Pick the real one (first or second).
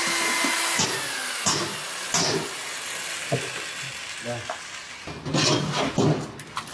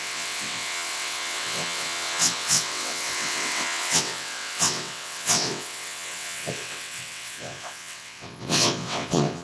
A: first